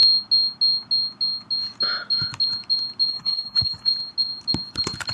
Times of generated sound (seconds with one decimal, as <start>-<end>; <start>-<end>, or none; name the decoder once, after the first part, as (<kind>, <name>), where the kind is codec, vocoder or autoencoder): 3.1-3.9 (codec, HILCodec)